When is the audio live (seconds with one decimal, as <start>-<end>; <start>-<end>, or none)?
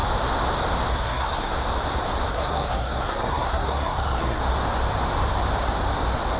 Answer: 0.0-0.9; 1.5-2.3; 4.4-6.4